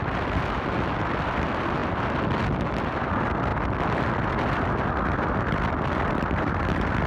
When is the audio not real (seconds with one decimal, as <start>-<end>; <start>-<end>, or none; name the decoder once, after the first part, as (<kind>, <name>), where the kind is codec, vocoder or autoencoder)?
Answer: none